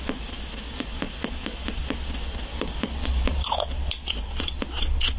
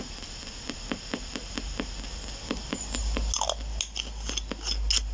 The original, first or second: second